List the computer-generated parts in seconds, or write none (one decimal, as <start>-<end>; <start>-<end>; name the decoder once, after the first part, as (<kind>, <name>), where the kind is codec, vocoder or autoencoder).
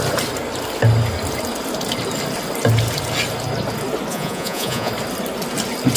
4.1-4.9 (vocoder, Vocos)